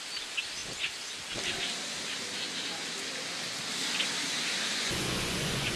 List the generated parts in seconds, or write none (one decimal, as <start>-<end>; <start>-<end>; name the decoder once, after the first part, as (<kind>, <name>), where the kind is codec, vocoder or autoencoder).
4.7-5.8 (vocoder, Vocos)